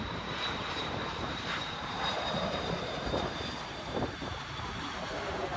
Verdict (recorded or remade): remade